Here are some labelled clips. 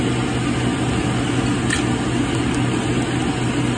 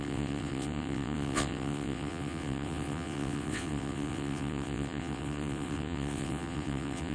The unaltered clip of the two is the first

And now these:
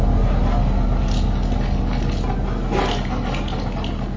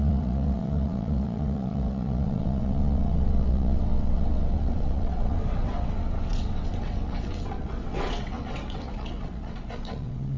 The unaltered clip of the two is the first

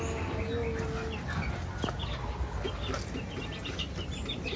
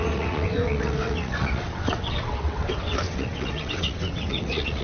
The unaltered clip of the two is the first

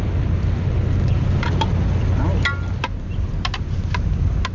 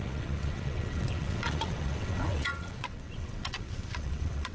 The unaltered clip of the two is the first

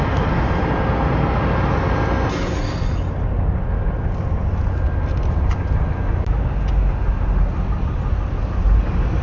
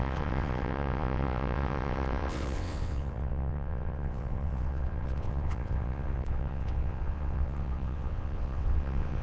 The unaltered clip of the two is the first